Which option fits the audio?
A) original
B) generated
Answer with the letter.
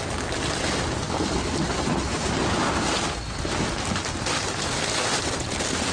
A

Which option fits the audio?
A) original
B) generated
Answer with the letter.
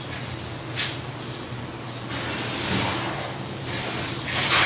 A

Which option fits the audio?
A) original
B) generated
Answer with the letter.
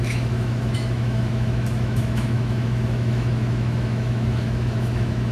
B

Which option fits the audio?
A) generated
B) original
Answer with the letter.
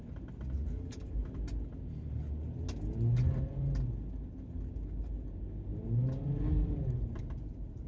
B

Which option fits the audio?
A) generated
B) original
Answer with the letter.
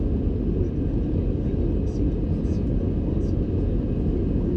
B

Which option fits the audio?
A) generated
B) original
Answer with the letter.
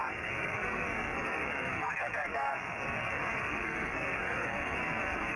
A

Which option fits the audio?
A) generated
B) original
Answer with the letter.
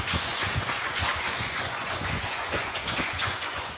A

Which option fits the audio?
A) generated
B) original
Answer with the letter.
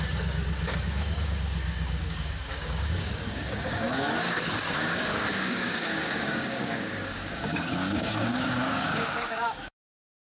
A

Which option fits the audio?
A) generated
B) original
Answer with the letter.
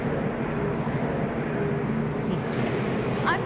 B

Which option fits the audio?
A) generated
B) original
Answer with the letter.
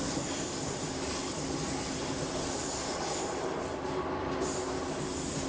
B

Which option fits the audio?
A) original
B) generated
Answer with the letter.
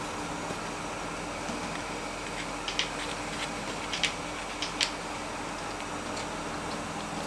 A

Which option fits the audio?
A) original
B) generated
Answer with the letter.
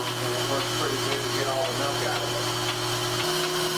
A